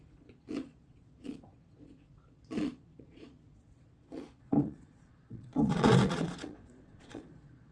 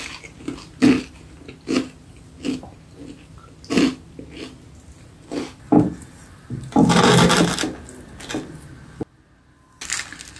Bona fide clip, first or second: second